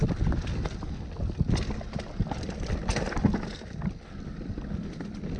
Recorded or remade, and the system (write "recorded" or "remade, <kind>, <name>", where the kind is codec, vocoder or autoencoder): recorded